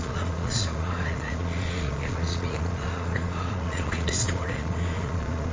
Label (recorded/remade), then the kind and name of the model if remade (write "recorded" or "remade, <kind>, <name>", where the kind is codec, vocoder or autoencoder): remade, vocoder, Vocos